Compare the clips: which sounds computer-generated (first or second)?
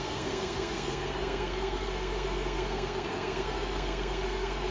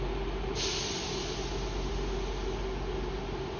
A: first